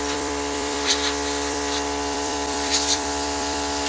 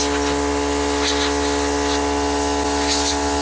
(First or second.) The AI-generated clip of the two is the first